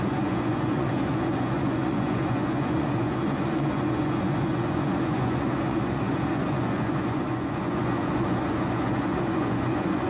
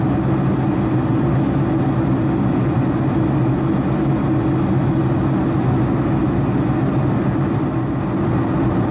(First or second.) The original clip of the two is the second